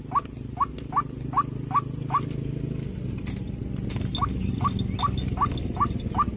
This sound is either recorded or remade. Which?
recorded